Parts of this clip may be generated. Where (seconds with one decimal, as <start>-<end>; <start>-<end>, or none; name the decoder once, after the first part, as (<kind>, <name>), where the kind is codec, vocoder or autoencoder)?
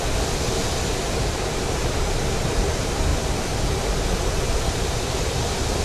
none